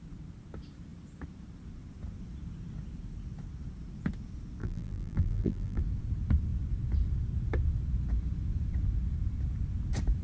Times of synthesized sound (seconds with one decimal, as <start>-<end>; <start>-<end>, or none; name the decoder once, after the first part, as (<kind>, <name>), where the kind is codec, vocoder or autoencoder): 4.6-5.8 (vocoder, BigVGAN v2)